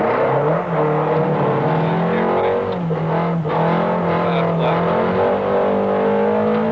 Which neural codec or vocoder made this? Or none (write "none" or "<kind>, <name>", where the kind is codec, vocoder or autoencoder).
none